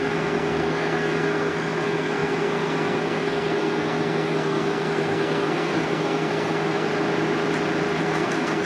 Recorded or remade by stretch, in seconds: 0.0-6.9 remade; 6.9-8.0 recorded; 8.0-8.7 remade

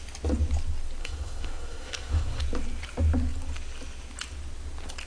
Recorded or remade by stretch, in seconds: 0.0-1.0 recorded; 1.0-2.4 remade; 2.4-5.1 recorded

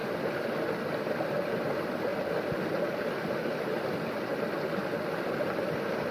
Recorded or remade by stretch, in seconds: 0.0-6.1 recorded

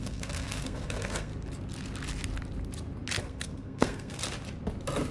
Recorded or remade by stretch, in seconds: 0.0-1.3 remade; 1.3-3.2 recorded; 3.2-4.2 remade; 4.2-5.1 recorded

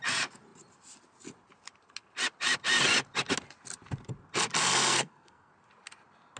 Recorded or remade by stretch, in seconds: 0.0-4.6 recorded; 4.6-5.5 remade; 5.5-6.4 recorded

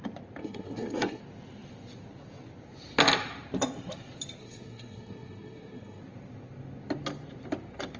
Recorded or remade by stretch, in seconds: 0.0-0.4 recorded; 0.4-1.2 remade; 1.2-4.4 recorded; 4.4-6.0 remade; 6.0-8.0 recorded